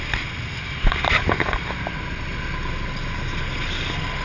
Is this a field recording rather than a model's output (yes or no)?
yes